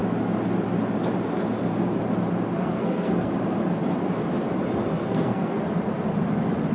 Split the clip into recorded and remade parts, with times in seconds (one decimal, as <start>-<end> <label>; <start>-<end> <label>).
0.0-2.5 recorded; 2.5-3.3 remade; 3.3-5.0 recorded; 5.0-5.6 remade; 5.6-6.7 recorded